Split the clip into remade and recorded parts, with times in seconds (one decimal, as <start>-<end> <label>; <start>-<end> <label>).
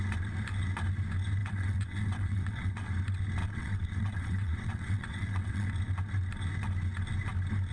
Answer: 0.0-1.4 recorded; 1.4-2.9 remade; 2.9-3.4 recorded; 3.4-5.7 remade; 5.7-7.7 recorded